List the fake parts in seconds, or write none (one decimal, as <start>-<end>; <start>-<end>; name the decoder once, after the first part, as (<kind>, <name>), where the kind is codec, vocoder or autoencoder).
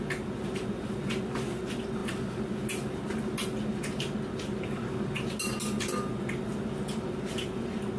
none